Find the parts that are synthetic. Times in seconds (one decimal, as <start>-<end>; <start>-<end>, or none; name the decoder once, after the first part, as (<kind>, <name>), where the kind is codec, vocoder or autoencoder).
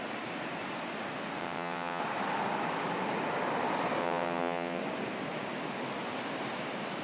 1.4-2.0 (vocoder, WaveNeXt); 4.0-4.8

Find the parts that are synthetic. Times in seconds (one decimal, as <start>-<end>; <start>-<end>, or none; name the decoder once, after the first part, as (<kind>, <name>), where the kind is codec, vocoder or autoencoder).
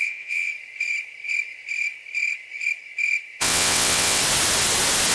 0.0-0.5 (vocoder, WaveNeXt); 3.4-4.2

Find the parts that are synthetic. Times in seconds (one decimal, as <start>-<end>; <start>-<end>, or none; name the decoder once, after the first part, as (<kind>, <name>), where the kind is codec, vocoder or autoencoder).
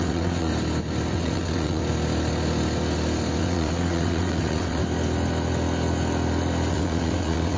0.0-0.5 (vocoder, WaveNeXt); 1.1-1.8; 3.4-4.8; 6.7-7.6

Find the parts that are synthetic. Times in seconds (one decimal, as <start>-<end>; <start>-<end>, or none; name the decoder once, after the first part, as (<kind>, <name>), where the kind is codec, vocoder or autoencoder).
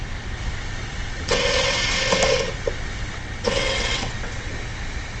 0.5-2.0 (vocoder, WaveNeXt); 2.5-4.5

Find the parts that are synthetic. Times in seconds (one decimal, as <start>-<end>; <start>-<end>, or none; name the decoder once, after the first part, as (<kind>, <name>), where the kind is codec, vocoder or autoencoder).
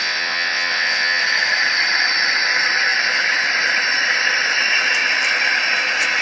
0.0-1.2 (vocoder, WaveNeXt)